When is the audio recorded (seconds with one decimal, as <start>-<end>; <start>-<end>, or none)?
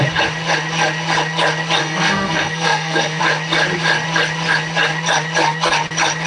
0.0-1.8; 3.2-6.3